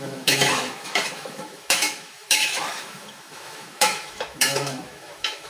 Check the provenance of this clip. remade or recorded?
remade